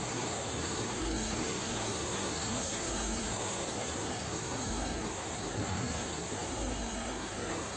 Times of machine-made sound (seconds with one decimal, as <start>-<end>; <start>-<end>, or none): 0.0-7.8